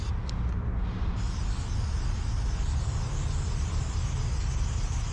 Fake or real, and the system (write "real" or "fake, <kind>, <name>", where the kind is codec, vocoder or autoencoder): real